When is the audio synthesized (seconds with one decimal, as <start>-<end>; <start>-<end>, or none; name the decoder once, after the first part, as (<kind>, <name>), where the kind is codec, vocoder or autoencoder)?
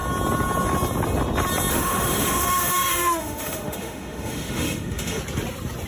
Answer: 1.7-5.2 (autoencoder, DAC-VAE)